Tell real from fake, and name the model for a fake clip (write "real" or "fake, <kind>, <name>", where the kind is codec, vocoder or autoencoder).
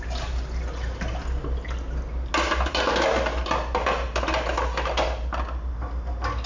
real